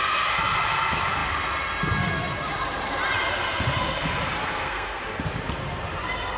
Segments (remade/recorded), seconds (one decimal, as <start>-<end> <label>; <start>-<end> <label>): 0.0-4.4 recorded; 4.4-5.0 remade; 5.0-6.4 recorded